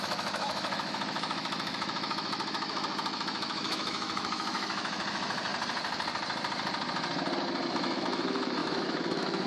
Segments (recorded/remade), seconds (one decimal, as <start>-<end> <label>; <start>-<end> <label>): 0.0-5.5 remade; 5.5-7.7 recorded; 7.7-9.5 remade